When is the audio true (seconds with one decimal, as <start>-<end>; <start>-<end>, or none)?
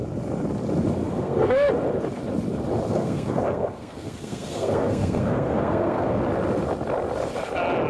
0.0-1.0; 1.7-2.9; 6.2-7.9